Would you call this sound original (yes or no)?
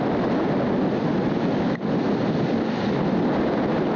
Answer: yes